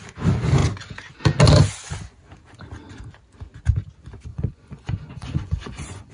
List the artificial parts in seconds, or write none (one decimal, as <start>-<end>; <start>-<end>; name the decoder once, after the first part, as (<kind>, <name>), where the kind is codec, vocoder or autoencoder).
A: 4.3-6.1 (vocoder, Vocos)